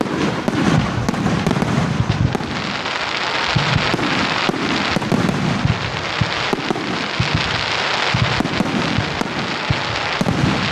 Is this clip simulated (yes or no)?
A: no